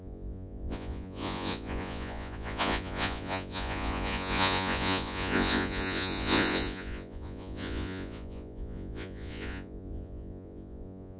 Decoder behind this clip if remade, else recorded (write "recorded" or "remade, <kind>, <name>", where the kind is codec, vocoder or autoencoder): remade, vocoder, Vocos